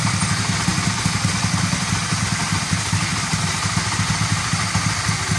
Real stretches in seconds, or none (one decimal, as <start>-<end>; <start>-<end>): 0.0-5.4

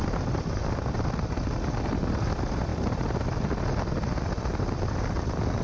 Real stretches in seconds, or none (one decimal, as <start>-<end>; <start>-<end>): 0.0-5.6

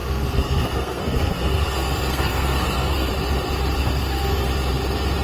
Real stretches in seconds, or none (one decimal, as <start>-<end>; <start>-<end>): 3.1-3.8; 4.5-5.2

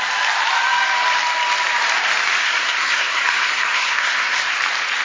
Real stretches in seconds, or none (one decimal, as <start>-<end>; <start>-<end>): 0.0-2.4; 4.5-5.0